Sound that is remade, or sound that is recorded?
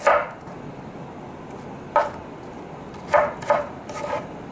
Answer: remade